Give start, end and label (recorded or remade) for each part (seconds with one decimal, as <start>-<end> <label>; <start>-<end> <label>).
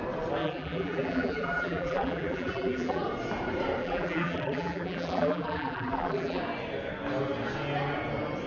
0.0-0.4 recorded; 0.4-3.0 remade; 3.0-3.8 recorded; 3.8-6.4 remade; 6.4-8.5 recorded